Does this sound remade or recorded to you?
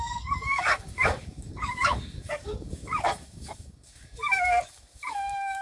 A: remade